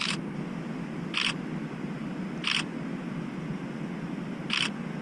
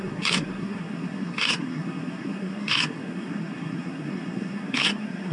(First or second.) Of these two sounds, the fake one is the second